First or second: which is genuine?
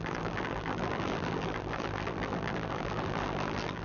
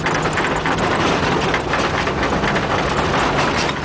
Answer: second